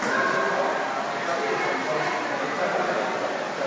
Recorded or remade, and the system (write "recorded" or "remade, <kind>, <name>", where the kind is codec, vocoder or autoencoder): recorded